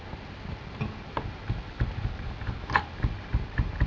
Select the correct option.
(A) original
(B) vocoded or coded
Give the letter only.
A